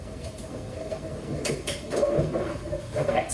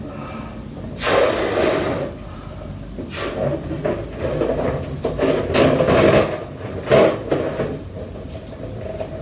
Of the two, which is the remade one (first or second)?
first